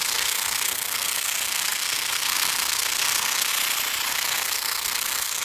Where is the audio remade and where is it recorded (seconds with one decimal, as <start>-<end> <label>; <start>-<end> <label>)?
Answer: 0.0-3.5 remade; 3.5-4.1 recorded; 4.1-5.4 remade